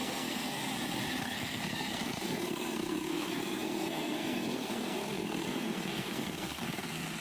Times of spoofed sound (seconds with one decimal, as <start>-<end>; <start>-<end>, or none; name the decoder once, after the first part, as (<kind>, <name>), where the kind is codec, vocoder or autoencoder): 0.0-0.6 (codec, SNAC); 1.2-7.2